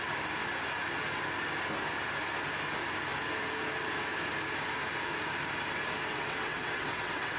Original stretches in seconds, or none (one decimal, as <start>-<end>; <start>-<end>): 0.0-6.1